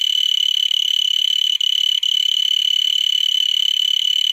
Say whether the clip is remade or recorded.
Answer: remade